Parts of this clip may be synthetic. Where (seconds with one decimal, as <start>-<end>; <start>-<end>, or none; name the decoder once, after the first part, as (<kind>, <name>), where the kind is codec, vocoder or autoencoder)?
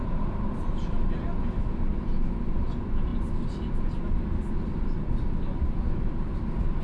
none